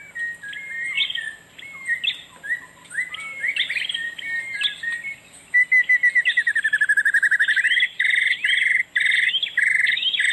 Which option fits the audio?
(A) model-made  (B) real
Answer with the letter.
B